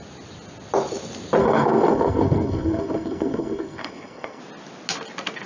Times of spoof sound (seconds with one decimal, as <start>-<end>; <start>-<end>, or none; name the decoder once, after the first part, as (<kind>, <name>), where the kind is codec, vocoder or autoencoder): 1.4-4.4 (codec, SNAC)